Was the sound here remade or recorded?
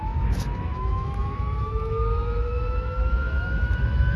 remade